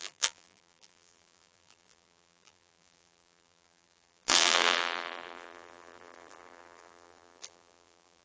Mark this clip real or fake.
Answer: fake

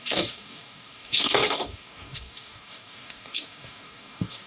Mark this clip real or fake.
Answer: fake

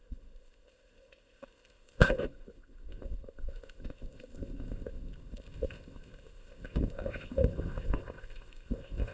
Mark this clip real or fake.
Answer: fake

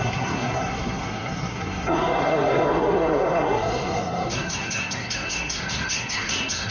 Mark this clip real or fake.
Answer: fake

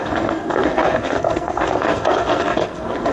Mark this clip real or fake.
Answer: fake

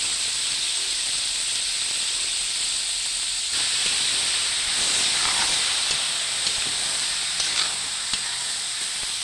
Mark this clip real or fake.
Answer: real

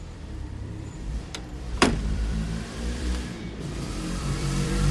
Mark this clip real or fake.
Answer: fake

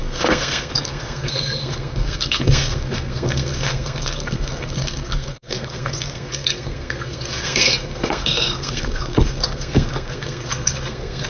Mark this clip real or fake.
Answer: fake